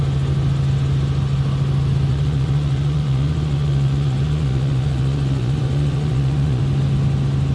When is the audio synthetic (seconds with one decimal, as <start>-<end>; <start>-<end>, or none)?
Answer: 2.1-6.6